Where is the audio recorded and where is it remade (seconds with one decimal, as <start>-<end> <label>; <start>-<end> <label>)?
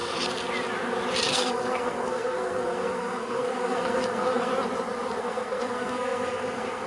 0.0-1.3 recorded; 1.3-4.5 remade; 4.5-5.2 recorded; 5.2-6.9 remade